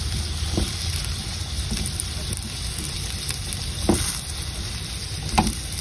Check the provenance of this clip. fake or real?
real